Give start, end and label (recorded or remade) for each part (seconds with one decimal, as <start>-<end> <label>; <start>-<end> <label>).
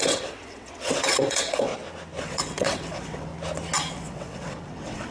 0.0-1.7 remade; 1.7-2.2 recorded; 2.2-3.3 remade; 3.3-3.9 recorded; 3.9-5.1 remade